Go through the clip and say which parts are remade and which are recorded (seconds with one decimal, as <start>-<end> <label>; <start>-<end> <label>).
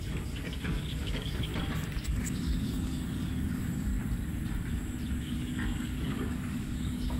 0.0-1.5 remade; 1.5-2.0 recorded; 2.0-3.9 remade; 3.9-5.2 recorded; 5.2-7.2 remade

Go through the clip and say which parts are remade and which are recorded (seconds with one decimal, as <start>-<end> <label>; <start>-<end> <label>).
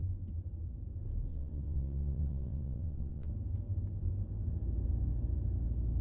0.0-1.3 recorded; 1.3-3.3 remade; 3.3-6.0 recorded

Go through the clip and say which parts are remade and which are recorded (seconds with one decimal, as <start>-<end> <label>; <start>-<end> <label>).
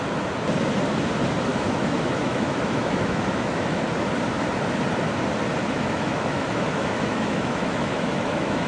0.0-1.5 recorded; 1.5-3.8 remade; 3.8-5.6 recorded; 5.6-8.7 remade